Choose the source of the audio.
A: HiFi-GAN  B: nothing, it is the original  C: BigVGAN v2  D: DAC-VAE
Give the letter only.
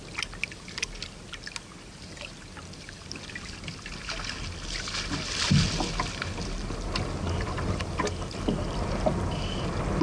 B